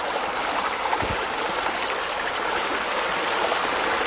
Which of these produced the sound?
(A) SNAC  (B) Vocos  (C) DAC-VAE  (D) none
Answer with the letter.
D